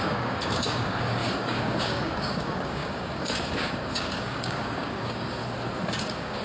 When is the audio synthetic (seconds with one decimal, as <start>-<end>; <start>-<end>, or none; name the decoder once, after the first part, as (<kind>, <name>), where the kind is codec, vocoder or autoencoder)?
0.0-5.4 (codec, DAC); 6.0-6.4